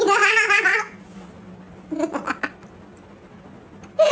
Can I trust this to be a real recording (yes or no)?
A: yes